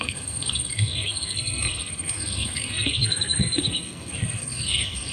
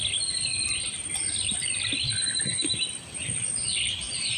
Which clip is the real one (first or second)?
second